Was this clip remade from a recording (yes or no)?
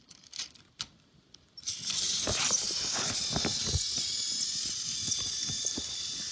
no